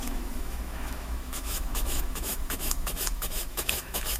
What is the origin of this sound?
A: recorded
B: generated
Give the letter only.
B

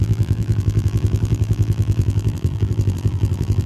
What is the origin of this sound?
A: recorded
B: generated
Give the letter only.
B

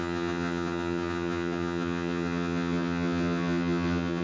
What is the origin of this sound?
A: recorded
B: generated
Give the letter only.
B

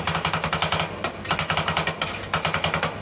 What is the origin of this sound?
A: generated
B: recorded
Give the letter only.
B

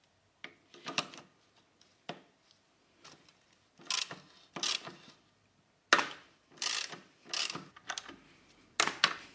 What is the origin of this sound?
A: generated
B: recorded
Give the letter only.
B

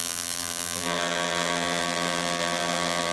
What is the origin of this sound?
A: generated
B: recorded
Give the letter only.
A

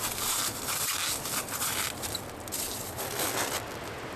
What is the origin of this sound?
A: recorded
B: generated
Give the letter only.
A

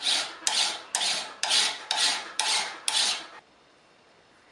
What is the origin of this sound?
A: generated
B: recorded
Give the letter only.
B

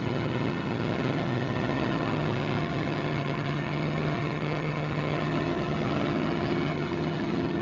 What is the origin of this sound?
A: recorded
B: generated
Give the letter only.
B